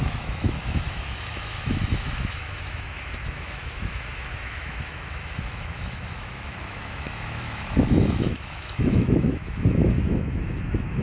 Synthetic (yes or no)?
yes